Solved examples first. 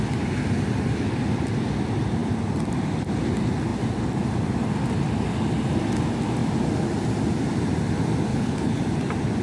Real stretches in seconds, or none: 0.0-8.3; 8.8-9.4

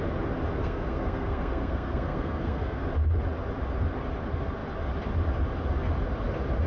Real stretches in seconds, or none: 0.0-0.6; 2.8-6.7

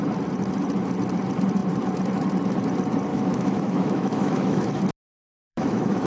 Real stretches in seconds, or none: 0.0-3.1; 4.8-5.5

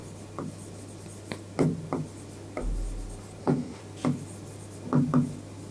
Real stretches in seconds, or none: 0.0-3.4; 3.8-5.7